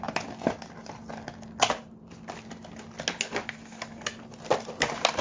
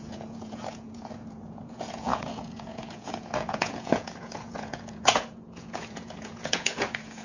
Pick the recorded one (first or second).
first